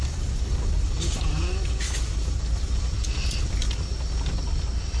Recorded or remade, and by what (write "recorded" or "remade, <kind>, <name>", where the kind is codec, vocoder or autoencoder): recorded